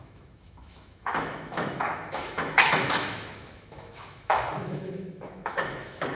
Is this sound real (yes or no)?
no